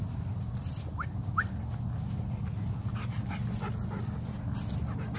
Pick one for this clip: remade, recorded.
recorded